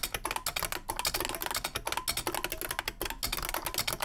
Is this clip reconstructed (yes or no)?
no